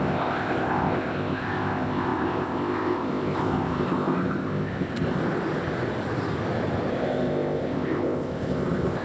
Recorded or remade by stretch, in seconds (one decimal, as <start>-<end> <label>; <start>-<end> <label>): 0.0-5.2 remade; 5.2-6.9 recorded; 6.9-9.0 remade